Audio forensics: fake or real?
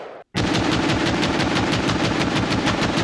fake